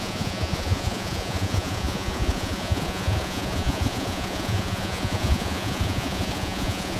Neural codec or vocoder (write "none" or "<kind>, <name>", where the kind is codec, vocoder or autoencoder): vocoder, Vocos